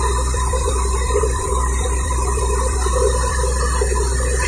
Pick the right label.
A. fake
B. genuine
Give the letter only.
A